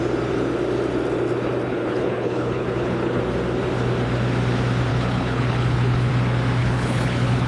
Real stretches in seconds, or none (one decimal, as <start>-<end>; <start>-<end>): 0.0-1.7; 3.2-4.9; 6.1-6.6